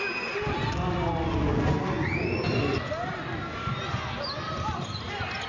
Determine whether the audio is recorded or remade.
recorded